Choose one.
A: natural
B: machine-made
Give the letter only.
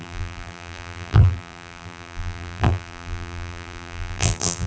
B